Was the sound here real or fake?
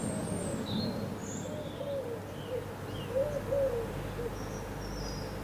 real